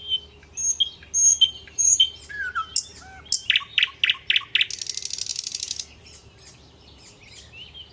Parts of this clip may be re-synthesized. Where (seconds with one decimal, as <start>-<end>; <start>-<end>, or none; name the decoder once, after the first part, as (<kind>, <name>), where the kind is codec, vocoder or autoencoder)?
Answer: 1.3-2.0 (vocoder, BigVGAN v2); 5.3-7.0